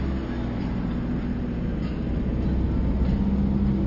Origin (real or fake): real